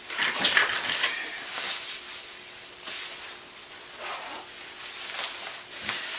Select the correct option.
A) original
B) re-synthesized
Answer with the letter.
A